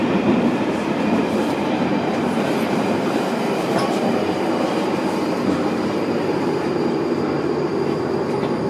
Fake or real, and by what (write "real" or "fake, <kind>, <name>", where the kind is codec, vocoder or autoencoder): fake, vocoder, BigVGAN v2